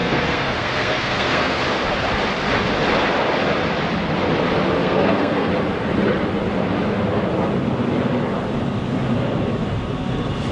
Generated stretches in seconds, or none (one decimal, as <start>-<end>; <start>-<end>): 0.0-1.6; 4.8-5.5